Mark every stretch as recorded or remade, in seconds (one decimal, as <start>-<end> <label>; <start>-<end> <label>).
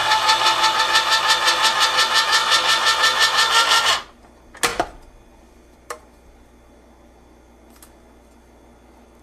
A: 0.0-2.4 recorded; 2.4-3.9 remade; 3.9-4.7 recorded; 4.7-6.0 remade; 6.0-9.2 recorded